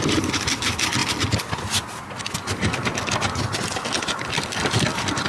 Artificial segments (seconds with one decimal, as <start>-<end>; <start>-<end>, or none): none